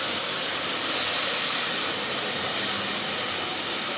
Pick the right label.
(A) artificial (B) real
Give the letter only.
B